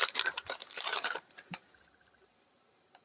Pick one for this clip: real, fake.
fake